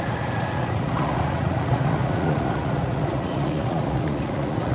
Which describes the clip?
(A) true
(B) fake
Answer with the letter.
B